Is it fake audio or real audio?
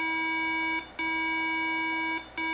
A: real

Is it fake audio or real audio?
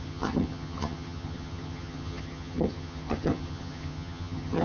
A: fake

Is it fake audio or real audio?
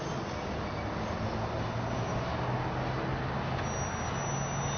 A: real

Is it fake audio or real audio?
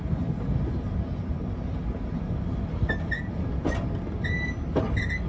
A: real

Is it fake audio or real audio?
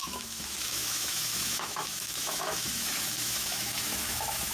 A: fake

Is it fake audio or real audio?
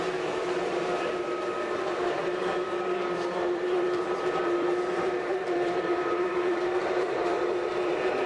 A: fake